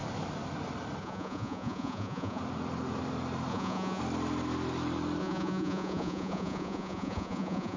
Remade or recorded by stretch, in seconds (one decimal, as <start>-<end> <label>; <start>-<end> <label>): 0.0-1.0 recorded; 1.0-2.4 remade; 2.4-3.5 recorded; 3.5-4.0 remade; 4.0-5.2 recorded; 5.2-7.8 remade